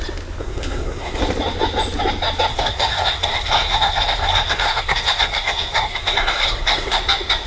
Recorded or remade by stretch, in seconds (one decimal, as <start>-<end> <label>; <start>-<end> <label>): 0.0-0.4 recorded; 0.4-1.2 remade; 1.2-2.5 recorded; 2.5-7.0 remade; 7.0-7.5 recorded